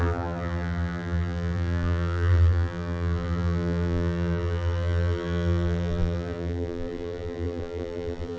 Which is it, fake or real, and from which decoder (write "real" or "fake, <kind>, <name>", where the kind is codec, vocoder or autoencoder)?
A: fake, vocoder, BigVGAN v2